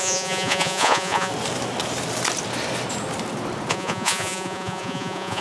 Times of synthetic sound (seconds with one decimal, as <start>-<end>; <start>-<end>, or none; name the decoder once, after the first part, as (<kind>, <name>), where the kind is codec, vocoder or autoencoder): 0.0-1.3 (vocoder, Vocos); 3.7-5.4